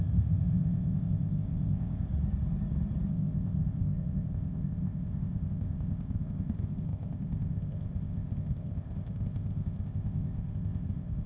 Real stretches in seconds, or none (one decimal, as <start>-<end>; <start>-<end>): 2.1-3.1